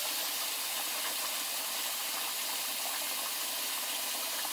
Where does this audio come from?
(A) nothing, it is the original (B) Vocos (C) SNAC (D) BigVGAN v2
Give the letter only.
A